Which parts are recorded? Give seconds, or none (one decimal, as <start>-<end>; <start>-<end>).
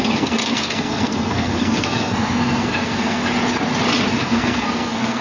3.2-4.2